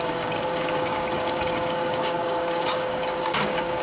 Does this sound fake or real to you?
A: fake